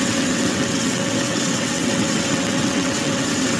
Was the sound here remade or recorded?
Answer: remade